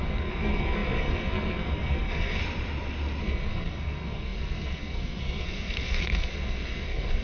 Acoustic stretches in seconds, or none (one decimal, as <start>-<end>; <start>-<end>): 2.4-3.2